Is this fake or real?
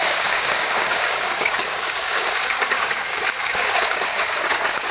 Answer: fake